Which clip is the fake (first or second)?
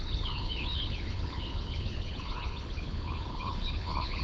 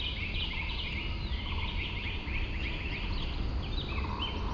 first